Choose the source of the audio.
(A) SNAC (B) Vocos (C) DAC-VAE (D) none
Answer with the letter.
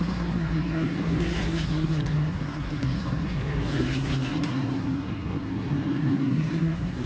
A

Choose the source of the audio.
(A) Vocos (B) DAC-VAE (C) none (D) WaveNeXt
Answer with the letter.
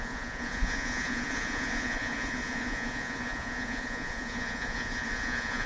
A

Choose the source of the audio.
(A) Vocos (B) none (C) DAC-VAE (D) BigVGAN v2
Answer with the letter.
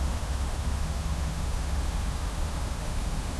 C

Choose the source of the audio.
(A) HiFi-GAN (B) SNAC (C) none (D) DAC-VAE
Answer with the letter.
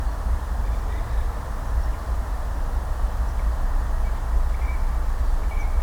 C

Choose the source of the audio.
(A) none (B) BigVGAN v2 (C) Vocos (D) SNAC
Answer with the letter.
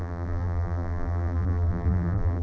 B